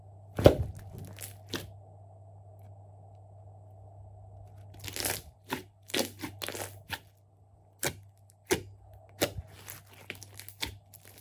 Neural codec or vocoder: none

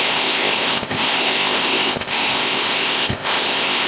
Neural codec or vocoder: codec, ZipCodec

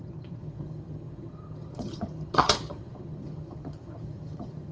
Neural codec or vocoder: vocoder, HiFi-GAN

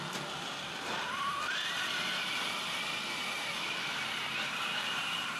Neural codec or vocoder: none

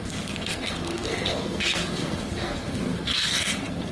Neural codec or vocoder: codec, SNAC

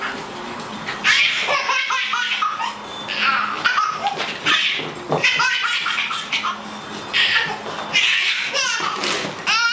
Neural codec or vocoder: none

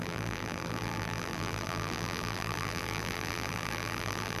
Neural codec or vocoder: vocoder, BigVGAN v2